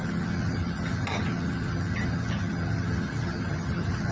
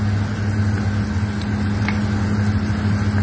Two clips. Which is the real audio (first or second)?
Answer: second